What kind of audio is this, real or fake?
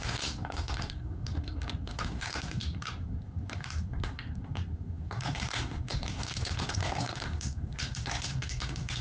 fake